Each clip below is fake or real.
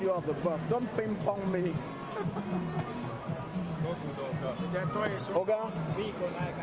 real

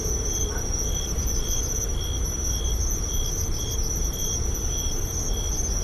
real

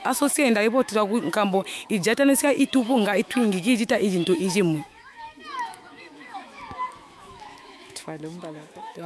fake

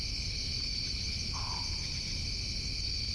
real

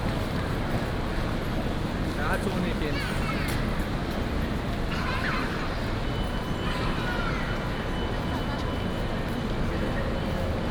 real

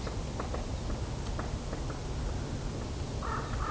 real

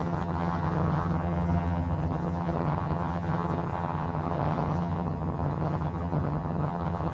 fake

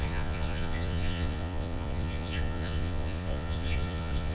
fake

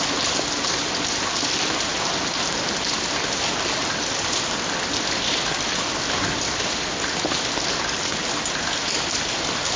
real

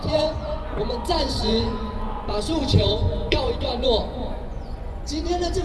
fake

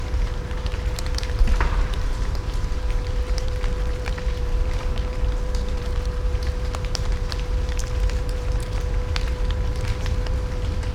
fake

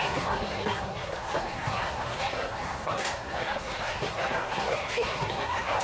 fake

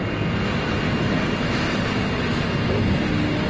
real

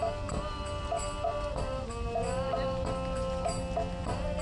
real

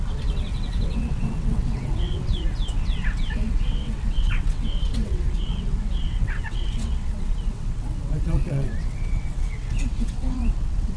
fake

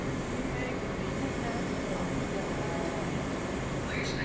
real